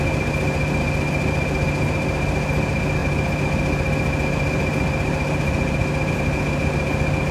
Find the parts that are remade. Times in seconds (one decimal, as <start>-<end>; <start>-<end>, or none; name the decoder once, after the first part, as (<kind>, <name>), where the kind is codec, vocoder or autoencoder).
none

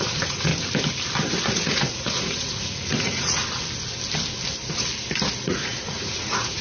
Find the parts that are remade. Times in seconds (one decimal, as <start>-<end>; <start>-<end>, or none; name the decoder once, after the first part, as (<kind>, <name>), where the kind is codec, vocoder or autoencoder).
0.0-0.5 (vocoder, Vocos); 1.3-3.4; 5.4-6.6

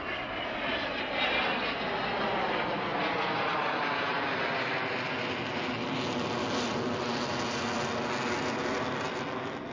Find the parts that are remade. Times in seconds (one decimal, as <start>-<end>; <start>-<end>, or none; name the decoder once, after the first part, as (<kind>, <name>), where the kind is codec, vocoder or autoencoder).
none

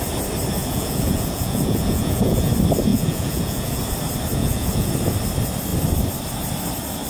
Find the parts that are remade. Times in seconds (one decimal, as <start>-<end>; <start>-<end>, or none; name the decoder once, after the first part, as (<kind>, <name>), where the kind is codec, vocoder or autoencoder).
0.6-2.5 (vocoder, Vocos); 2.9-3.8; 4.4-4.9

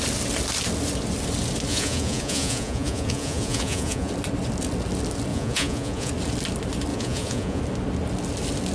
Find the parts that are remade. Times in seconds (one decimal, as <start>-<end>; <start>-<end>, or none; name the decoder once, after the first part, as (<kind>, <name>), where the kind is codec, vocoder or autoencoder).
1.7-4.1 (vocoder, Vocos); 5.3-6.1; 6.9-7.6

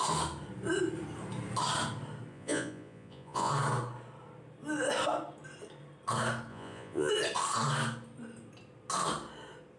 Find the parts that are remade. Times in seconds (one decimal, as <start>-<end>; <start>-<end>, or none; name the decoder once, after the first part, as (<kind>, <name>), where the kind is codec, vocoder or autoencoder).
2.3-3.5 (vocoder, Vocos); 6.5-7.1

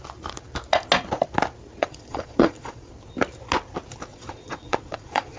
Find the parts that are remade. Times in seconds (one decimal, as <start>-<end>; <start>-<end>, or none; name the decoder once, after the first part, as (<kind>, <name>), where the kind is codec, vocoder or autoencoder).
1.8-2.9 (vocoder, Vocos); 4.1-5.4